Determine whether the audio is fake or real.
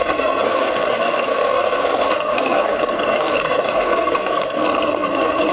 fake